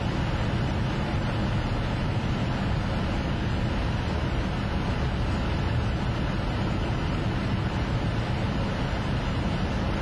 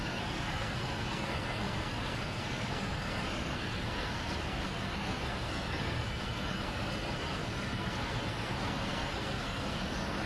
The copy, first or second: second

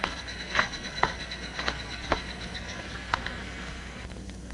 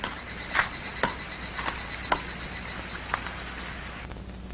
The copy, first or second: first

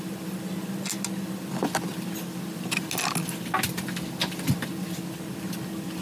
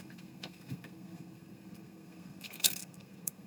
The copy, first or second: second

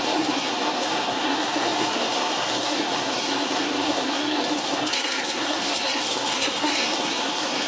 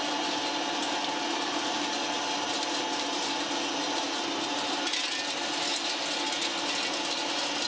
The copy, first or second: first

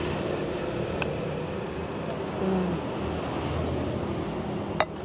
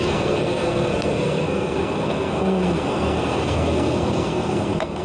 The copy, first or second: second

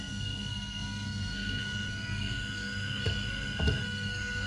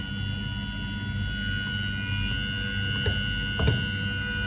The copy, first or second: first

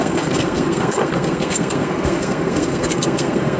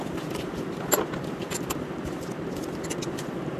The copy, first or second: first